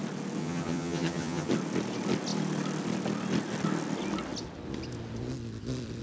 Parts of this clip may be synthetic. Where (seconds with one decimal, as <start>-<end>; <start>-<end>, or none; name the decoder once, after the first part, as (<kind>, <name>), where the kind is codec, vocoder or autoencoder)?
0.4-1.5 (vocoder, HiFi-GAN)